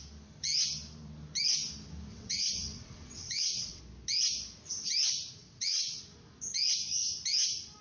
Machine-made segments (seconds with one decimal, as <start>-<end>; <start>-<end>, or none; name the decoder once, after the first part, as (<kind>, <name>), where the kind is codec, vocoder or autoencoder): 2.1-3.8 (vocoder, WaveNeXt); 5.4-6.0